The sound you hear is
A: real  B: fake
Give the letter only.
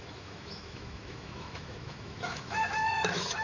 B